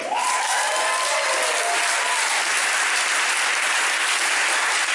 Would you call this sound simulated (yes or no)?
no